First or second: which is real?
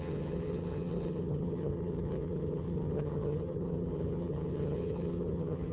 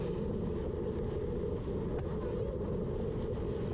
second